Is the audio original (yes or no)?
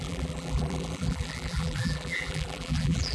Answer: no